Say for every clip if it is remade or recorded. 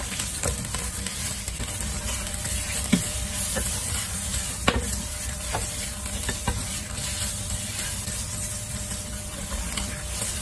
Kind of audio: remade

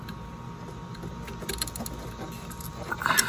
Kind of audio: recorded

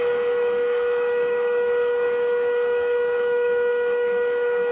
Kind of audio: remade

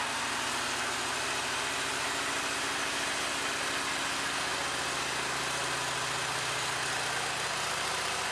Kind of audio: recorded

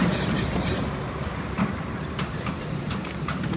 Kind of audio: remade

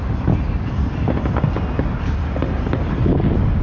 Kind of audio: recorded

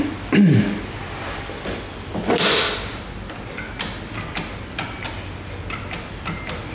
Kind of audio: recorded